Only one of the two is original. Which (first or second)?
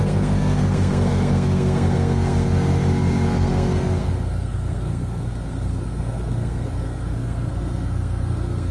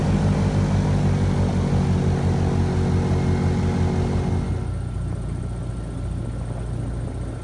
second